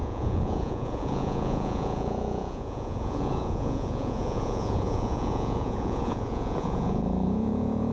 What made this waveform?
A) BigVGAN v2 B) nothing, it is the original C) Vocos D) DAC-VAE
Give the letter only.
C